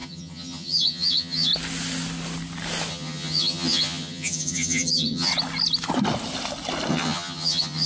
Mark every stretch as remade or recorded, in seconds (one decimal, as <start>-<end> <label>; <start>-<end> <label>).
0.0-1.5 remade; 1.5-2.9 recorded; 2.9-5.3 remade; 5.3-6.9 recorded; 6.9-7.9 remade